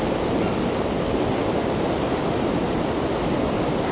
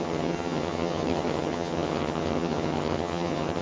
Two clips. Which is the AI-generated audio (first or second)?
second